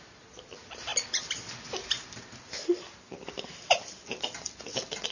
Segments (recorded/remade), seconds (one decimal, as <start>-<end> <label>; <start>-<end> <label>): 0.0-5.1 recorded